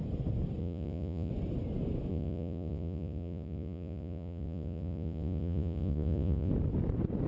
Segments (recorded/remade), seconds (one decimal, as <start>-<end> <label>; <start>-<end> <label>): 0.0-0.6 recorded; 0.6-1.3 remade; 1.3-2.1 recorded; 2.1-6.5 remade; 6.5-7.3 recorded